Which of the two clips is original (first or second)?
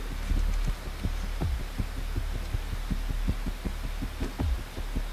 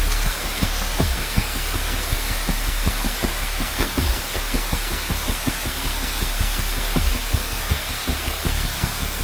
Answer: first